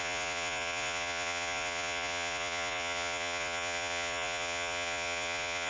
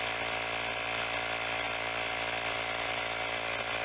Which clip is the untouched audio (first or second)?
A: second